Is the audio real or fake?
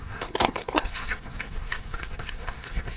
fake